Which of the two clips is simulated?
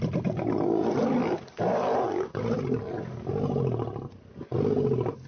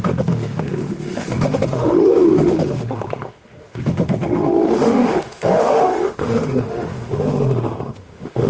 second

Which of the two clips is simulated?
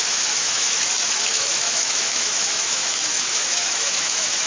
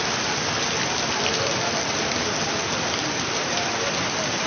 first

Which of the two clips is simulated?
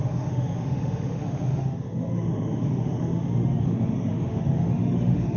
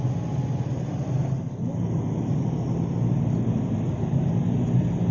first